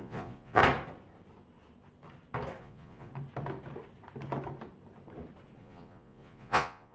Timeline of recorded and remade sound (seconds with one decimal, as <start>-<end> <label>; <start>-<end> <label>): 0.0-0.6 remade; 0.6-2.6 recorded; 2.6-3.1 remade; 3.1-5.6 recorded; 5.6-6.9 remade